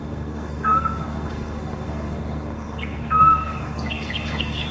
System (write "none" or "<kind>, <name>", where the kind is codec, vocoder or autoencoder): codec, SNAC